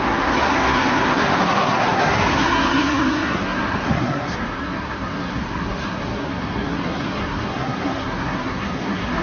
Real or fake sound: fake